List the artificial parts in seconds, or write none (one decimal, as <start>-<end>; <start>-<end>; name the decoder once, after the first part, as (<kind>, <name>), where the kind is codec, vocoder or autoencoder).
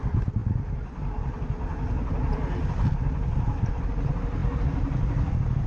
none